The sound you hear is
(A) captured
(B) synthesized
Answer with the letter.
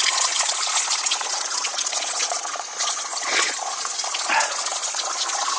B